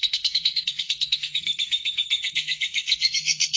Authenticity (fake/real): fake